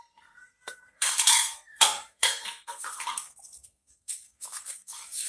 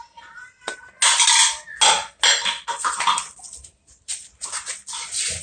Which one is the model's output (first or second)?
first